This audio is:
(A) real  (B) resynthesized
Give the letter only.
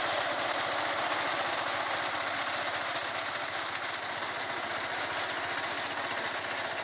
A